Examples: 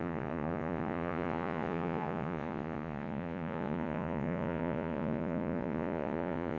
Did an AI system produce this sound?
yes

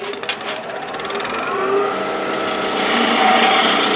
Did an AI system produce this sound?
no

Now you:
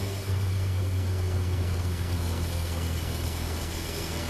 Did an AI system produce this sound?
yes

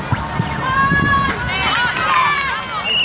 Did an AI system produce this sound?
no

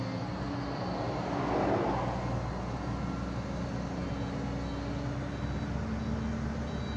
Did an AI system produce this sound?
no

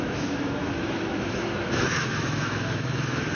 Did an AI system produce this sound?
yes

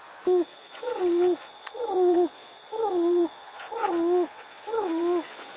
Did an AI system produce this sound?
yes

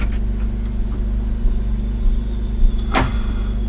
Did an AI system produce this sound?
no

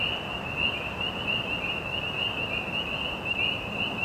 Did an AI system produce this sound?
no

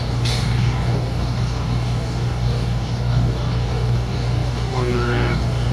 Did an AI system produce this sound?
yes